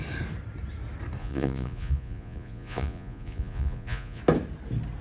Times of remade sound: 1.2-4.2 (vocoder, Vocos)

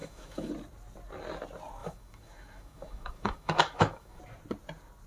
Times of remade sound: 0.0-0.5 (autoencoder, DAC-VAE); 1.8-4.2